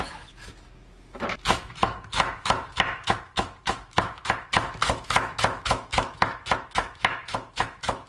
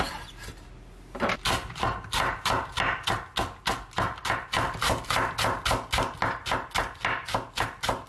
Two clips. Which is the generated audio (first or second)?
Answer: first